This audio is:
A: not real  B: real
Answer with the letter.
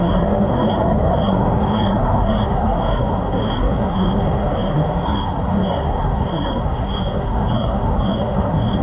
A